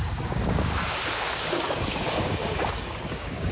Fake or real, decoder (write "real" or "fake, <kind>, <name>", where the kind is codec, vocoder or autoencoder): fake, codec, DAC